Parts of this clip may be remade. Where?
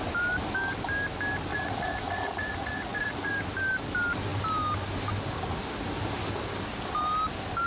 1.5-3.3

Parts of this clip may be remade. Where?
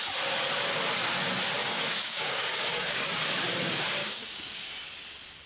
1.6-3.1; 4.0-4.7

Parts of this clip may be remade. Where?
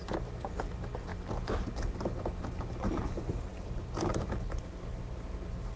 none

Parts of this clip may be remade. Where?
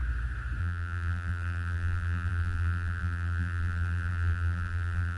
0.6-5.2